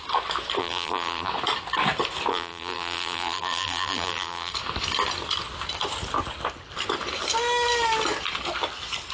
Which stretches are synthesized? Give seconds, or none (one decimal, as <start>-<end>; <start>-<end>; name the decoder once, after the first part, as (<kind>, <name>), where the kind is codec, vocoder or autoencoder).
0.6-1.3 (vocoder, BigVGAN v2); 2.3-4.5